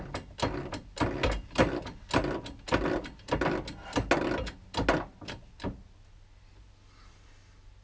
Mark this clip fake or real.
real